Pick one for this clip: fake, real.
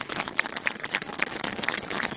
fake